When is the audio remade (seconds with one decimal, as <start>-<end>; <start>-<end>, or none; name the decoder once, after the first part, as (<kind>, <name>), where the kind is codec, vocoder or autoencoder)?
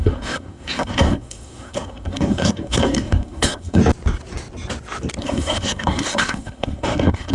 0.0-3.8 (codec, SNAC); 5.2-7.3